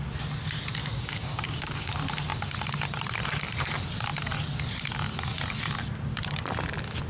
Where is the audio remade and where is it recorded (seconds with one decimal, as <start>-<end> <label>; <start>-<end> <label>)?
0.0-0.8 recorded; 0.8-1.9 remade; 1.9-7.1 recorded

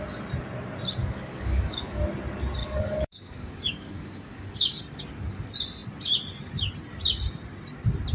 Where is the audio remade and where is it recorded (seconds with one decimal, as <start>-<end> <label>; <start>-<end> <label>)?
0.0-1.0 recorded; 1.0-2.0 remade; 2.0-2.6 recorded; 2.6-4.8 remade; 4.8-8.1 recorded

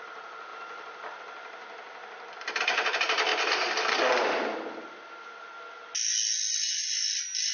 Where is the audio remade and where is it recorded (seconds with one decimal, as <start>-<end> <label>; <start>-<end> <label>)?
0.0-7.5 recorded